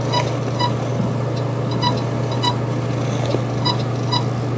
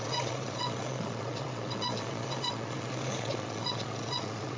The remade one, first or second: second